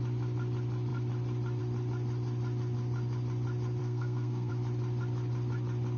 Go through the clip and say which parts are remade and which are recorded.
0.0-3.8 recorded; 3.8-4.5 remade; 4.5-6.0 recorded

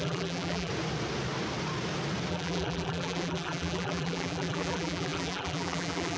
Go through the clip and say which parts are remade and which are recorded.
0.0-0.7 remade; 0.7-2.3 recorded; 2.3-6.2 remade

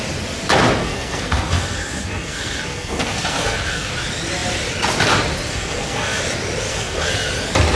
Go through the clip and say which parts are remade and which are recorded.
0.0-0.8 recorded; 0.8-3.9 remade; 3.9-5.5 recorded; 5.5-6.2 remade; 6.2-6.7 recorded; 6.7-7.3 remade; 7.3-7.8 recorded